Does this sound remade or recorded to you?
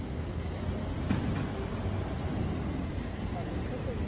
recorded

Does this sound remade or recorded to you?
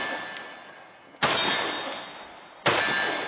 recorded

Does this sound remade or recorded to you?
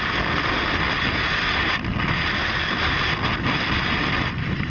recorded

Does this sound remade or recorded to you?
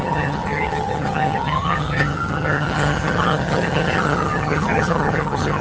remade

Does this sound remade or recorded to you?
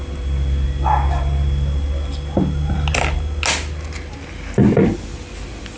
recorded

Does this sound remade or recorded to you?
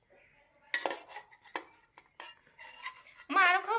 recorded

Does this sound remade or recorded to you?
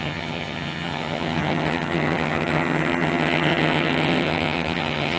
remade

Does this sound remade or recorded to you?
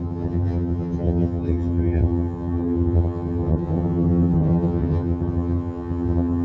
remade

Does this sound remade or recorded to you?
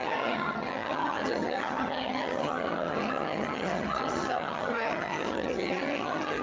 remade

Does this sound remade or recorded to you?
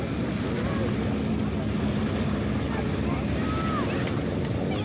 recorded